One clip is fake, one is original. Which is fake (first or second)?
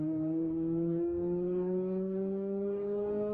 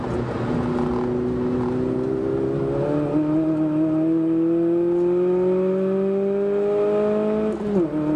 first